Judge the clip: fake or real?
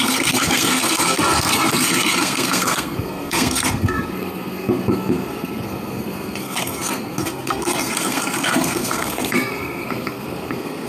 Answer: fake